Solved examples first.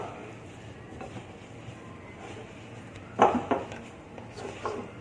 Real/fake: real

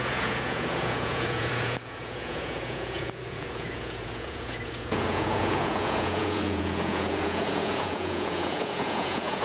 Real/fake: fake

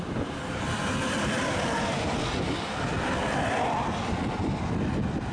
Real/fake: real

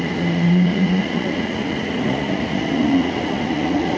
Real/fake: fake